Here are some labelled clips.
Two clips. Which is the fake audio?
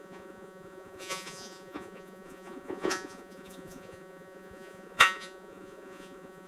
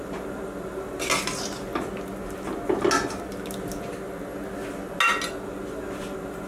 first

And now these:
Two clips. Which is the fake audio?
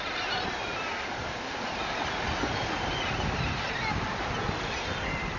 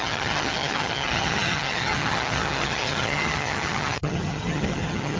second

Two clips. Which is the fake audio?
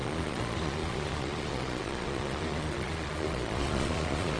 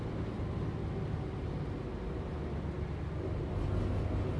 first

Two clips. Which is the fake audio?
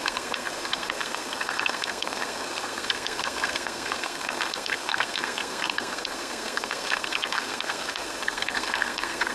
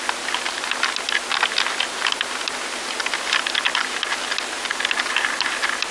first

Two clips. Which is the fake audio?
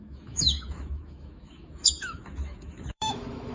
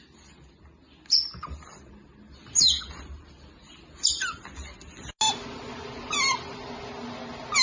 first